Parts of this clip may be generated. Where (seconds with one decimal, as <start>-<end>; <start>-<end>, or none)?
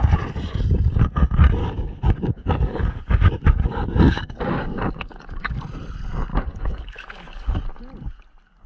1.6-5.6; 6.3-7.6